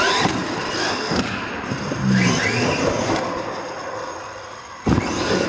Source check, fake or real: real